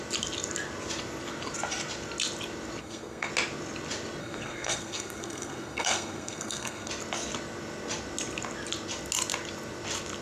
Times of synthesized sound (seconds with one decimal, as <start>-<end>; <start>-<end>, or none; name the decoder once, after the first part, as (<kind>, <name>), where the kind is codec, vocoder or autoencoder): 2.8-3.3 (codec, SNAC); 4.2-6.9